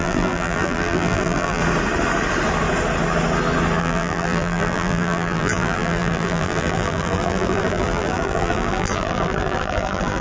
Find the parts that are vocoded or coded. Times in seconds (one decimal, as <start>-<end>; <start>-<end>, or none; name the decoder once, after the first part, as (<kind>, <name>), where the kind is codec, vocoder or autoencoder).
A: 0.0-1.6 (vocoder, BigVGAN v2); 3.8-10.2